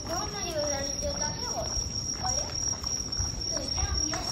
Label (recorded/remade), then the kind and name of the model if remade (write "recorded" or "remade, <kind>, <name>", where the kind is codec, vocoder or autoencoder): recorded